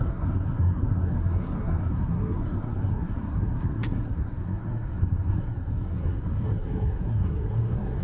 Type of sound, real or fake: fake